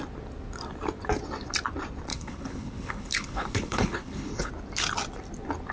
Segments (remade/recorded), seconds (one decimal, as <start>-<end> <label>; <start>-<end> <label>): 0.0-2.1 recorded; 2.1-4.5 remade; 4.5-5.7 recorded